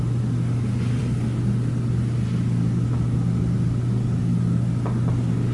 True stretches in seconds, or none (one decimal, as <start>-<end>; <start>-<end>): 0.0-5.5